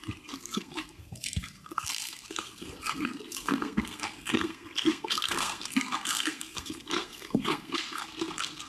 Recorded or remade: remade